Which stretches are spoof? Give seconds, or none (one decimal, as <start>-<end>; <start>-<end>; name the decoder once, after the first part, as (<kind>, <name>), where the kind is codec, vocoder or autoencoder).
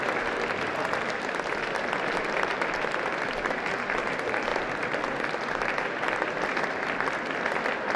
none